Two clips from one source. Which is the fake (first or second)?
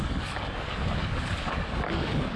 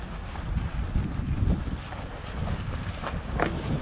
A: first